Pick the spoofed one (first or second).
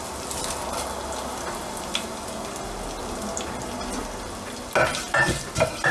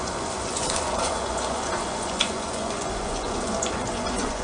second